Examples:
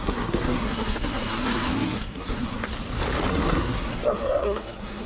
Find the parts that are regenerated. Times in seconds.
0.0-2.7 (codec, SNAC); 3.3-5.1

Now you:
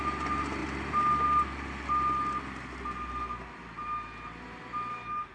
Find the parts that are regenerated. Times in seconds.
none

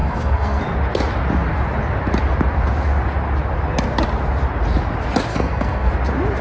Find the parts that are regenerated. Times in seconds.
0.0-0.6 (codec, SNAC); 5.3-5.9

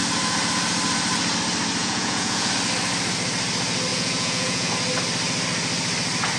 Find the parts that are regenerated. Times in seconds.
1.8-2.5 (vocoder, Vocos); 3.9-4.7

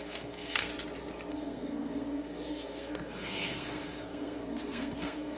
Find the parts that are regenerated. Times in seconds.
0.0-0.7 (codec, SNAC); 1.3-5.4